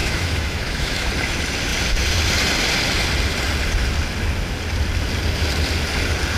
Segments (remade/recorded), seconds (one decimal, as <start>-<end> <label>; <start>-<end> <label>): 0.0-1.1 remade; 1.1-6.4 recorded